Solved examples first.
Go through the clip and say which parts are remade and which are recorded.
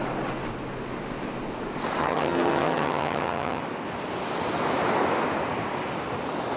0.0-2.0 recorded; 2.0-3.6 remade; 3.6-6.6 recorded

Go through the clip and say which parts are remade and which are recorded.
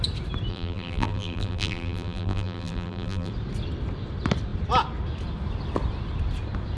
0.0-0.5 recorded; 0.5-3.3 remade; 3.3-6.8 recorded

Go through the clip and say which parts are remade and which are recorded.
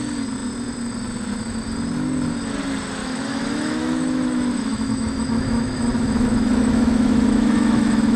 0.0-3.0 recorded; 3.0-8.2 remade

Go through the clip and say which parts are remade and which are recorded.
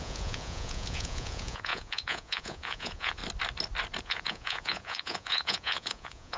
0.0-3.2 remade; 3.2-4.0 recorded; 4.0-6.4 remade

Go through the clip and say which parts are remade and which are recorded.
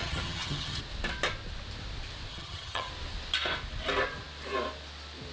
0.0-0.8 remade; 0.8-2.3 recorded; 2.3-2.9 remade; 2.9-5.3 recorded